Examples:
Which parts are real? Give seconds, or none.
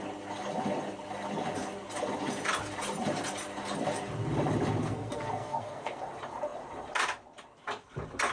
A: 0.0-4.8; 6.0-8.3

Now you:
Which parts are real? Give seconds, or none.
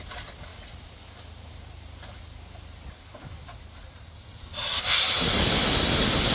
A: 0.0-6.3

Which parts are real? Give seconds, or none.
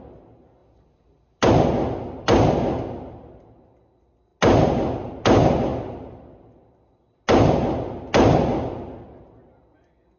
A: 0.0-10.2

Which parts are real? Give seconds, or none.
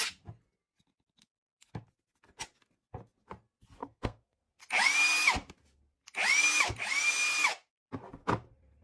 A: 0.0-3.8; 4.4-8.8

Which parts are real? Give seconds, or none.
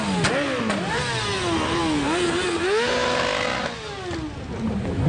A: 0.0-5.1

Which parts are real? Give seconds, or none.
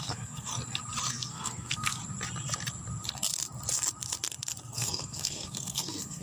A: 0.5-1.1; 2.0-4.6